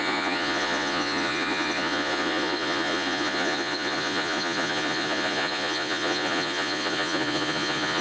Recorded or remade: remade